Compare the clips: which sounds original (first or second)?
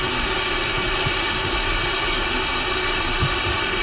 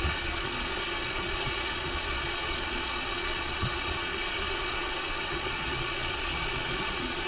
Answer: first